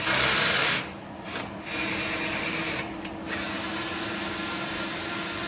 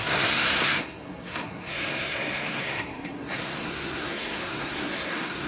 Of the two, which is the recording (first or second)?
first